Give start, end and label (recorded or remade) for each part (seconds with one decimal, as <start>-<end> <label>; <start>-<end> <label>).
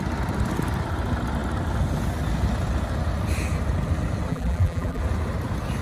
0.0-4.3 recorded; 4.3-5.0 remade; 5.0-5.8 recorded